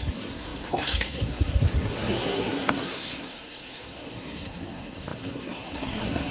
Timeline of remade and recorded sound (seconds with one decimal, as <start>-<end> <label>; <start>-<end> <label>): 0.0-6.3 remade